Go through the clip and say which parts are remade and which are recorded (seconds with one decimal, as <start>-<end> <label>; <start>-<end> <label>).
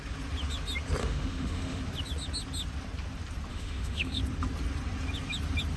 0.0-1.0 recorded; 1.0-1.8 remade; 1.8-3.5 recorded; 3.5-4.2 remade; 4.2-5.8 recorded